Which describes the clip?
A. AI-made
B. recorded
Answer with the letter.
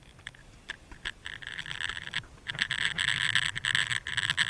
B